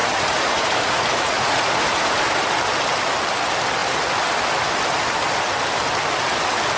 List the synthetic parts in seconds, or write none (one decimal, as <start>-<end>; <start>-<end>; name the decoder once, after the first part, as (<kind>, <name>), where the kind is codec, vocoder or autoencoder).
0.0-2.2 (vocoder, Vocos)